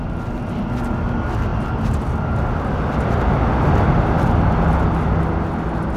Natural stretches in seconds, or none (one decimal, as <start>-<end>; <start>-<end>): 0.0-6.0